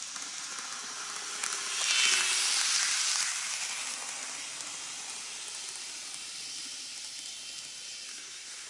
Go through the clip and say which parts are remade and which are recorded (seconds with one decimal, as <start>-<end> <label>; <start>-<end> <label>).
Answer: 0.0-8.1 recorded; 8.1-8.7 remade